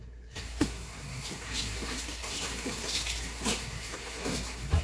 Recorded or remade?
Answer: remade